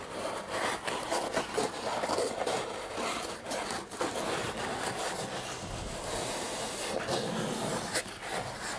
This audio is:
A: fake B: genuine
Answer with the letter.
B